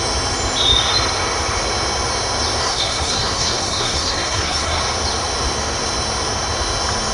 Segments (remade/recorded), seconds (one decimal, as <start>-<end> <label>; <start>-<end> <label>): 0.0-2.6 recorded; 2.6-4.8 remade; 4.8-7.1 recorded